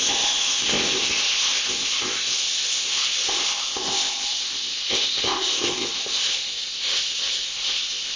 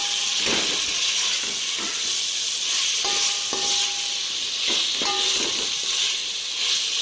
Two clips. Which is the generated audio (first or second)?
first